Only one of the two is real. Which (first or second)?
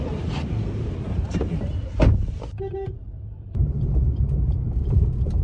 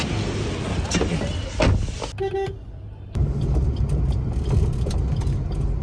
second